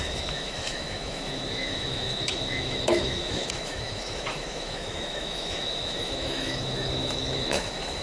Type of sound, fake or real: fake